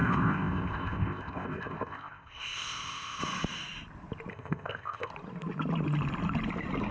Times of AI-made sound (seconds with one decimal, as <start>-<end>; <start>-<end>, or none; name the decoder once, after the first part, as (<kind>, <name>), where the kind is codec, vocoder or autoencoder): 0.0-3.2 (codec, ZipCodec); 4.3-5.1